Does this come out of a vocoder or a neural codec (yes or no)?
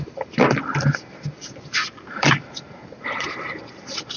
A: yes